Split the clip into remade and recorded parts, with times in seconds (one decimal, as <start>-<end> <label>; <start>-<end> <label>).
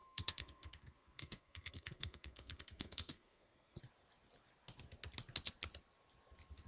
0.0-3.8 remade; 3.8-6.7 recorded